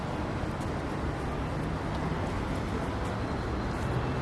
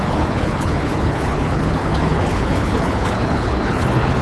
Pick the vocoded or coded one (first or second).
second